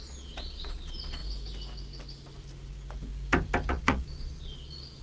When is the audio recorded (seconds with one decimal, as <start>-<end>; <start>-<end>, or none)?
1.2-3.7